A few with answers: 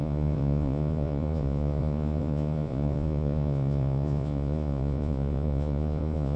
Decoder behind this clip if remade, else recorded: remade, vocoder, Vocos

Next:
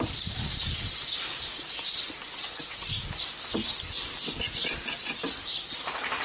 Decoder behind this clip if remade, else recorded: recorded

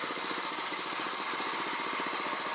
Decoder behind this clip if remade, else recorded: recorded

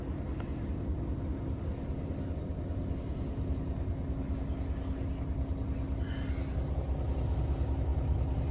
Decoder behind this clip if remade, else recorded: recorded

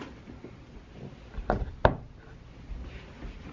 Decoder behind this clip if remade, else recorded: recorded